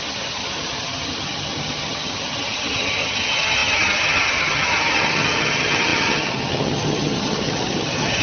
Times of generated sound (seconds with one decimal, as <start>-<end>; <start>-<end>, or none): 0.0-8.2